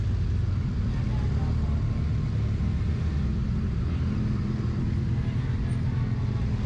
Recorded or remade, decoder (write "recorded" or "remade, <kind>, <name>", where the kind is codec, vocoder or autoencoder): recorded